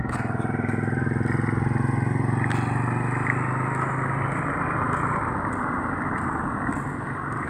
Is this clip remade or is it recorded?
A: recorded